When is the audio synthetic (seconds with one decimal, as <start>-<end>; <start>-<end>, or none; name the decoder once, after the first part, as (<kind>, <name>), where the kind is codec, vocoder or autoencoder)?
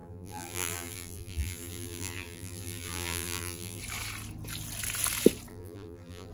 0.0-3.8 (vocoder, BigVGAN v2); 5.5-6.3